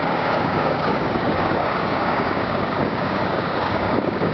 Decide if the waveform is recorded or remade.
remade